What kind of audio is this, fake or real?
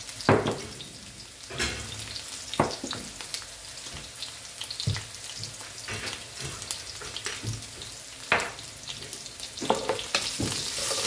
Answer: real